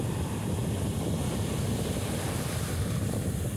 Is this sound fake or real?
real